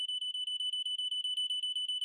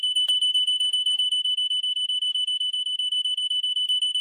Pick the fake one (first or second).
second